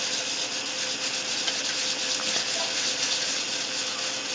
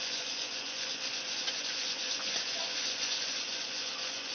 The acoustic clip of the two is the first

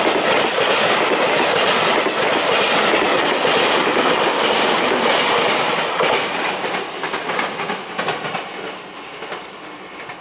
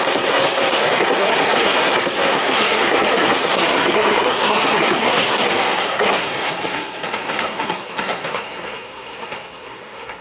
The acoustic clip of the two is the first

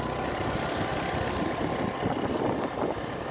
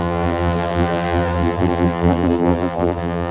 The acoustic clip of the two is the first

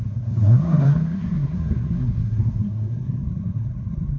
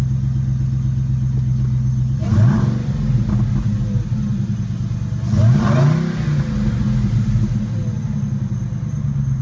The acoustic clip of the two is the second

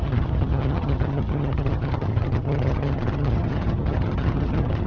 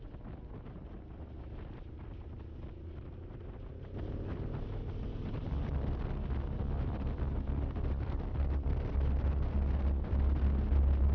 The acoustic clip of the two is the second